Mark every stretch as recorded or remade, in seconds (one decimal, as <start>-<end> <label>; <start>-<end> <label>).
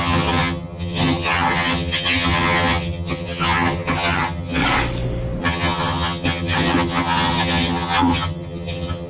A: 0.0-4.6 remade; 4.6-5.4 recorded; 5.4-9.1 remade